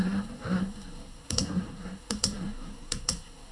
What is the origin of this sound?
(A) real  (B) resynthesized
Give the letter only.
B